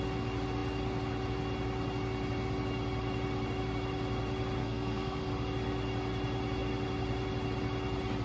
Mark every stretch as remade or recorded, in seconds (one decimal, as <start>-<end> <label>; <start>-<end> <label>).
0.0-4.6 recorded; 4.6-5.3 remade; 5.3-8.2 recorded